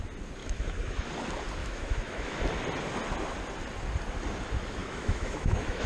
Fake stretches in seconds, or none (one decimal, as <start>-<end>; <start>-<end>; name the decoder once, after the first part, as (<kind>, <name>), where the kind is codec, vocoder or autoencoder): 0.4-1.1 (autoencoder, DAC-VAE); 1.6-2.4; 4.8-5.9